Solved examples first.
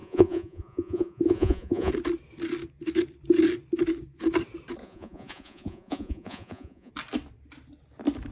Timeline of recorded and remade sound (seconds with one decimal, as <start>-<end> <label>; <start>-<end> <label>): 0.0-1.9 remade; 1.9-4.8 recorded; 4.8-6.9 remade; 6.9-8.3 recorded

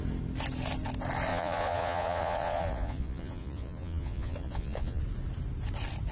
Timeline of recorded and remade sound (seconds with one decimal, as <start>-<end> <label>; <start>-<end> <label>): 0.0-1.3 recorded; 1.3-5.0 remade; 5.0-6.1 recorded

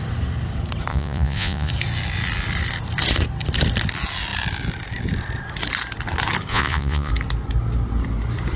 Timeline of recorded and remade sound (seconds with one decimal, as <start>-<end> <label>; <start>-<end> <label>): 0.0-0.9 recorded; 0.9-1.7 remade; 1.7-6.5 recorded; 6.5-7.1 remade; 7.1-8.6 recorded

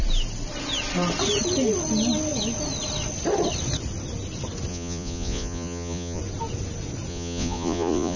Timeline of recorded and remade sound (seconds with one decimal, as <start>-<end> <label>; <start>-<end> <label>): 0.0-4.7 recorded; 4.7-6.2 remade; 6.2-7.1 recorded; 7.1-8.2 remade